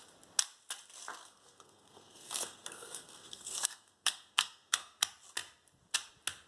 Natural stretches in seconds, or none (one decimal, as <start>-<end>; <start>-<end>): 0.0-1.2; 5.0-6.5